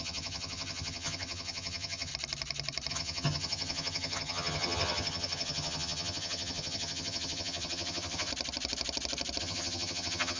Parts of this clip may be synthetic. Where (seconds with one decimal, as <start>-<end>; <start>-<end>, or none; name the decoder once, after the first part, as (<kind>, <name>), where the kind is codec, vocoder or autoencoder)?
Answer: 0.0-2.1 (vocoder, HiFi-GAN); 2.9-8.3; 9.4-10.4